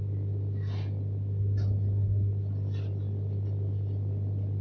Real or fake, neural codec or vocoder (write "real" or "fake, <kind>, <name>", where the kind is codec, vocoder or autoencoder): real